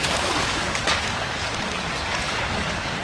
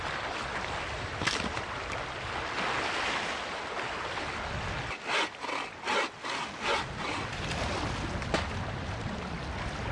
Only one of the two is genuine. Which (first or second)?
second